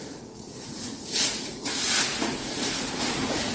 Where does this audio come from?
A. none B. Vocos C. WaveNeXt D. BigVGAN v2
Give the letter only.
B